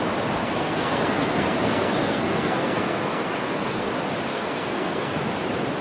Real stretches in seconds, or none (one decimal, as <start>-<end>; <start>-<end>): 0.0-0.4; 3.9-4.3; 5.2-5.8